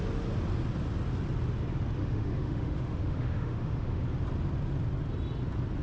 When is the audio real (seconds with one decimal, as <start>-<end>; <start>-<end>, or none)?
0.0-2.0; 4.0-5.8